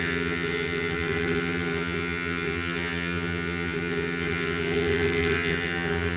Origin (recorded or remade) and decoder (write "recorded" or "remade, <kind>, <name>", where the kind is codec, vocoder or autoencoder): remade, vocoder, HiFi-GAN